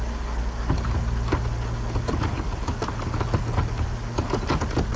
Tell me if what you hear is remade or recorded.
recorded